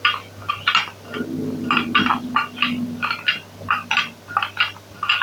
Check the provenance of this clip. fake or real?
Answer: real